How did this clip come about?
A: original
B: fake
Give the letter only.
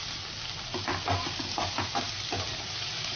A